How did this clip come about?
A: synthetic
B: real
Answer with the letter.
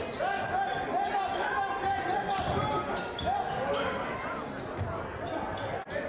B